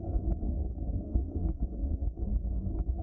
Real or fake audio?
fake